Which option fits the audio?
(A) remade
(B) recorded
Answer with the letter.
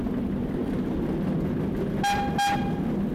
B